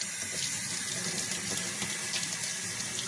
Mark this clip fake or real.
real